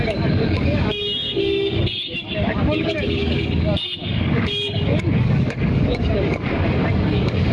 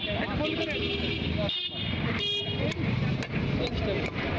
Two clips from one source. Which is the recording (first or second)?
second